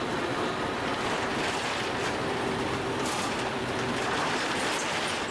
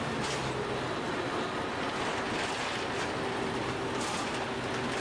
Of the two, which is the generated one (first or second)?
first